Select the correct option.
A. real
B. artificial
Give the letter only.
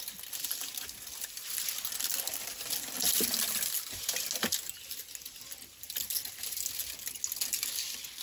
A